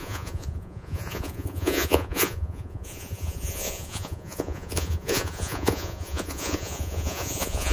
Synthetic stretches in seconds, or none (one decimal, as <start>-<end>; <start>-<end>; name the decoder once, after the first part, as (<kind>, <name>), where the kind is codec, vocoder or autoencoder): 0.0-7.7 (vocoder, Vocos)